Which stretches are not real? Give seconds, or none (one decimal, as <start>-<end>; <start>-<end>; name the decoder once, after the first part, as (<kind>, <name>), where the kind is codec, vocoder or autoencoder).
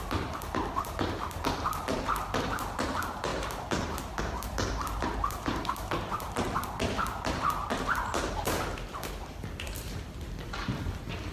0.0-3.3 (vocoder, BigVGAN v2); 4.2-11.3